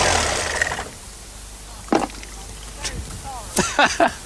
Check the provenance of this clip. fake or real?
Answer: real